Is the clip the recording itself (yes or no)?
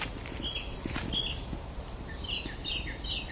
yes